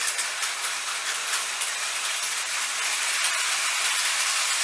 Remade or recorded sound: recorded